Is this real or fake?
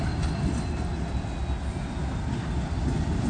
real